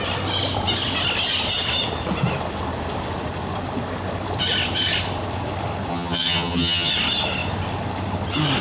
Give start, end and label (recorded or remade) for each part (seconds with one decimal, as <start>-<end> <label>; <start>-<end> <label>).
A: 0.0-5.9 recorded; 5.9-6.9 remade; 6.9-8.6 recorded